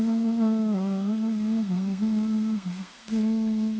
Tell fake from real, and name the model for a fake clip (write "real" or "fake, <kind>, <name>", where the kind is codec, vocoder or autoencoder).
fake, codec, SNAC